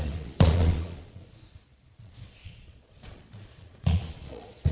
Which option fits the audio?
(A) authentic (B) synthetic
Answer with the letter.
B